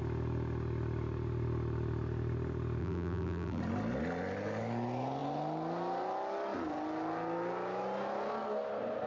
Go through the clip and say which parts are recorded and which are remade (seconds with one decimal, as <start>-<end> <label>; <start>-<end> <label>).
0.0-2.8 recorded; 2.8-3.6 remade; 3.6-9.1 recorded